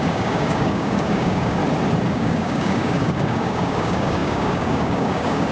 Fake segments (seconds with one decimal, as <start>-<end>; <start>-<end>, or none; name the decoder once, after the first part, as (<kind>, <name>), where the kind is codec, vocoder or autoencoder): 0.0-1.6 (codec, DAC); 2.1-5.5